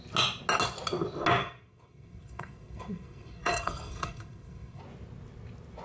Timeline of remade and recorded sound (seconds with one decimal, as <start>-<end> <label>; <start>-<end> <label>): 0.0-1.4 recorded; 1.4-4.8 remade; 4.8-5.8 recorded